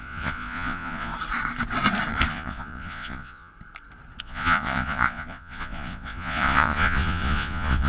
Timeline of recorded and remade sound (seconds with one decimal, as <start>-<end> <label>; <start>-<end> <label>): 0.0-1.1 remade; 1.1-2.3 recorded; 2.3-3.5 remade; 3.5-4.2 recorded; 4.2-7.9 remade